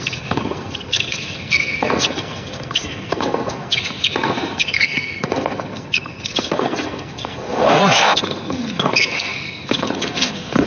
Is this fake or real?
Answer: fake